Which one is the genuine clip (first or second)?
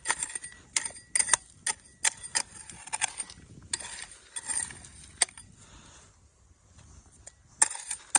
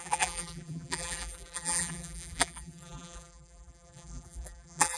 first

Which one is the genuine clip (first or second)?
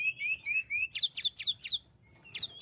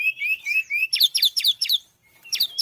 first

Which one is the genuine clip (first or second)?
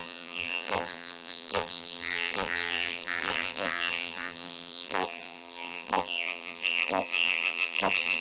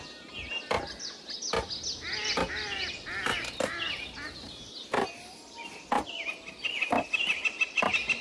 second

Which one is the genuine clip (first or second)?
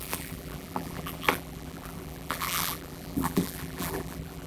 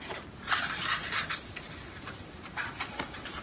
second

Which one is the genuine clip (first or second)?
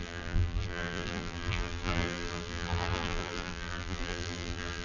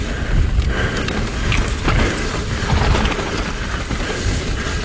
second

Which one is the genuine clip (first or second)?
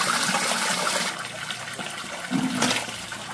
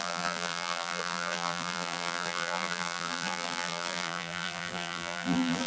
first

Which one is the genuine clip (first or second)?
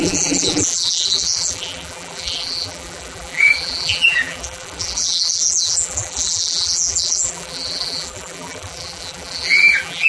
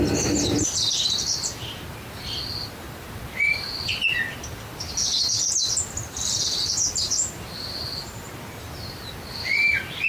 second